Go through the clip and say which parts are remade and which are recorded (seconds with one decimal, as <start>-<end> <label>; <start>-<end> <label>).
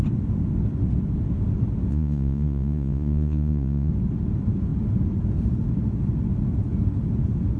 0.0-1.9 recorded; 1.9-3.9 remade; 3.9-7.6 recorded